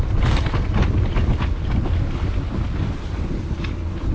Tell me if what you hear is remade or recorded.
recorded